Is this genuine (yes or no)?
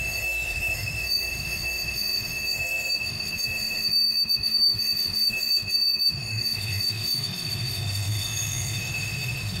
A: no